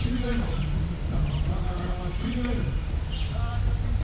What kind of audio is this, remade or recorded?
recorded